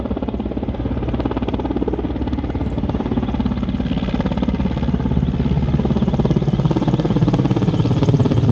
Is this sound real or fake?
real